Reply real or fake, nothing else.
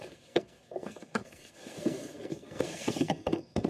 fake